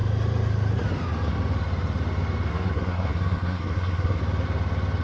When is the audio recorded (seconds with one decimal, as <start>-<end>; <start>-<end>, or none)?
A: 0.0-2.5; 4.2-5.0